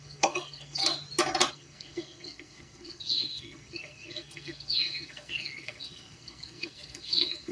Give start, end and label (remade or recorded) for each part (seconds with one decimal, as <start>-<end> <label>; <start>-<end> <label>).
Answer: 0.0-0.8 remade; 0.8-1.5 recorded; 1.5-7.5 remade